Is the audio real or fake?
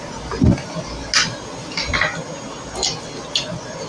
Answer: real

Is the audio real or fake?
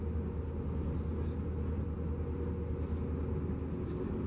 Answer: real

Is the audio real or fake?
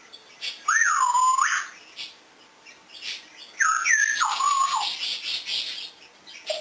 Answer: real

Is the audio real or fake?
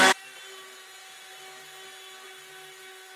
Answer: real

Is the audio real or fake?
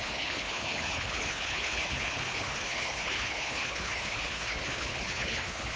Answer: fake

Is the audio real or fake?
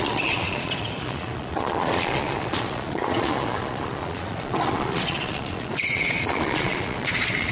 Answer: fake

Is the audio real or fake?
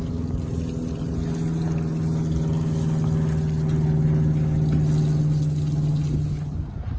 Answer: real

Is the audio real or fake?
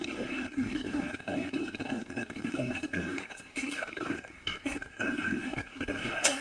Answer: fake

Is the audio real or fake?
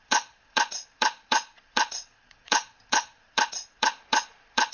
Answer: fake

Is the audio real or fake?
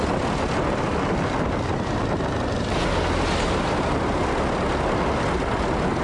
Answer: real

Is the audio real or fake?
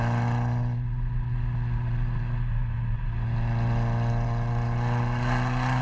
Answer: real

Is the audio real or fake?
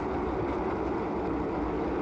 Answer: real